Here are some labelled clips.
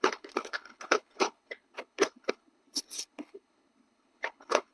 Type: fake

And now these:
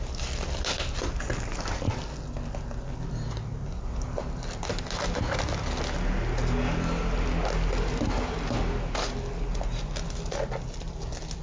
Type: real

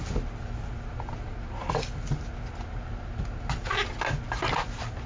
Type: real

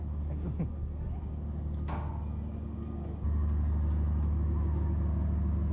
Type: real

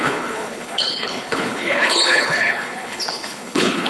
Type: fake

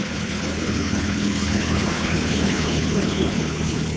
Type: fake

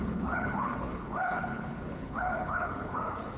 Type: fake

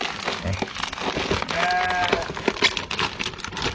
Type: real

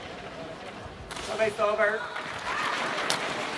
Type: real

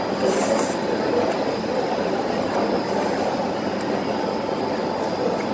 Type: real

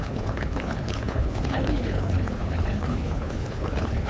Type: fake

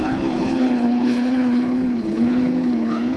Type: fake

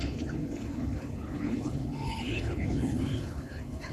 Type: fake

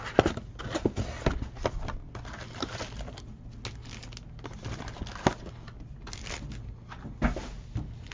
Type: real